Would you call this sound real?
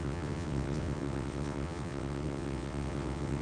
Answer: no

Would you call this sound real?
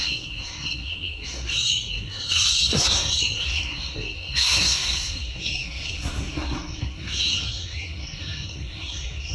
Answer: no